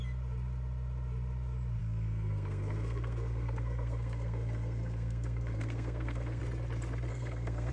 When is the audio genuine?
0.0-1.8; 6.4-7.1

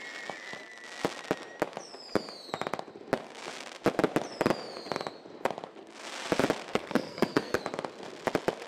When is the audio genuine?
0.0-6.7; 7.6-8.7

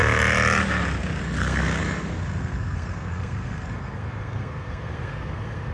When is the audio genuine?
0.0-1.2

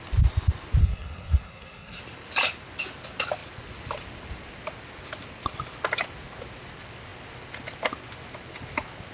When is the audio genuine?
0.0-0.8; 2.0-9.1